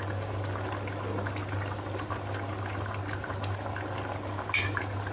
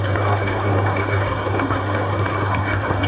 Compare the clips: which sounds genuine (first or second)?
first